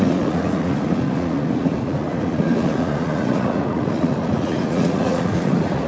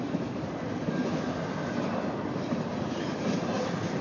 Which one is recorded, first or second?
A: second